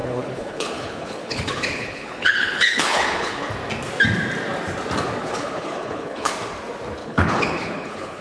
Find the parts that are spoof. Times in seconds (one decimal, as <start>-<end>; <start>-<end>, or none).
0.0-3.5; 5.2-6.3; 7.0-8.2